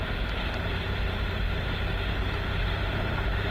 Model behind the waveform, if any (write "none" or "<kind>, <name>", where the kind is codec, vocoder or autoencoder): none